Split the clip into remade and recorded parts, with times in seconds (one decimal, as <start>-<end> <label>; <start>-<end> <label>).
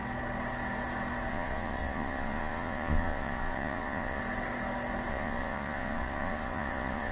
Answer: 0.0-1.3 recorded; 1.3-4.2 remade; 4.2-5.1 recorded; 5.1-7.1 remade